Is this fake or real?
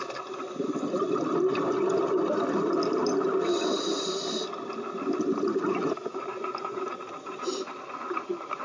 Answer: real